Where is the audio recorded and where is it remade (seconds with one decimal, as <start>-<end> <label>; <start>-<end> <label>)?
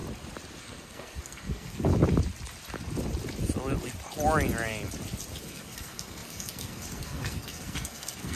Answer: 0.0-0.6 recorded; 0.6-1.9 remade; 1.9-5.4 recorded; 5.4-8.4 remade